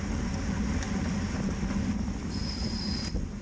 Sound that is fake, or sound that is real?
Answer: real